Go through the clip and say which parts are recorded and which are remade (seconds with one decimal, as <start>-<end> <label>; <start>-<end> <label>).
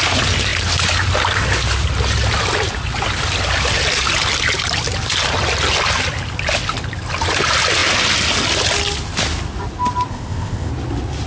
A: 0.0-10.1 recorded; 10.1-10.7 remade; 10.7-11.3 recorded